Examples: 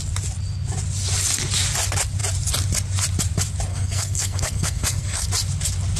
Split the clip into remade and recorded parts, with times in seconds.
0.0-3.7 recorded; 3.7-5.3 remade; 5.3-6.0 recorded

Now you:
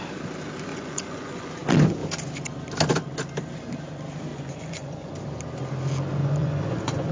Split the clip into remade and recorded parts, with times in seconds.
0.0-0.7 recorded; 0.7-1.5 remade; 1.5-4.3 recorded; 4.3-5.1 remade; 5.1-6.2 recorded; 6.2-7.1 remade

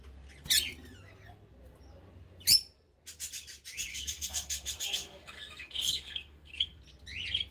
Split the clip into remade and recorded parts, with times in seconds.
0.0-3.9 recorded; 3.9-6.8 remade; 6.8-7.5 recorded

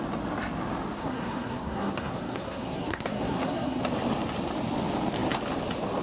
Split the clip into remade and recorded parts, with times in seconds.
0.0-1.0 recorded; 1.0-3.8 remade; 3.8-6.0 recorded